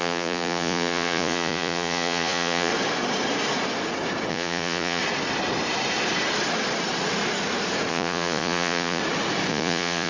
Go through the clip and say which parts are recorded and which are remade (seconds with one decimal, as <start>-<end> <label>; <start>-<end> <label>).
0.0-2.7 remade; 2.7-4.3 recorded; 4.3-5.0 remade; 5.0-7.9 recorded; 7.9-9.0 remade; 9.0-9.5 recorded; 9.5-10.1 remade